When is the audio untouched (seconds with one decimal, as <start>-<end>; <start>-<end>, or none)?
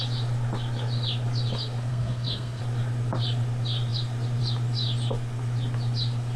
0.0-1.9; 2.6-6.4